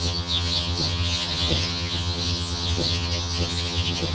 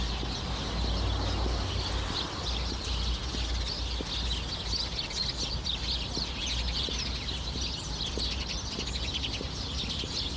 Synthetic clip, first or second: first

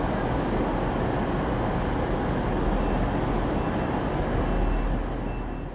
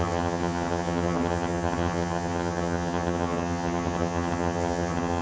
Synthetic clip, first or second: second